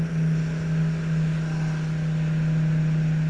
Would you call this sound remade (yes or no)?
no